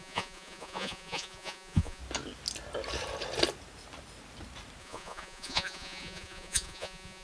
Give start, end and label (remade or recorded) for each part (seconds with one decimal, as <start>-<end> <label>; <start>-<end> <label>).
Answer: 0.0-2.0 remade; 2.0-4.8 recorded; 4.8-7.2 remade